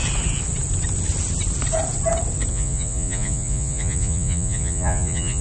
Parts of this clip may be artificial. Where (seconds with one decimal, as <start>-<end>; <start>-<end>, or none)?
2.5-5.4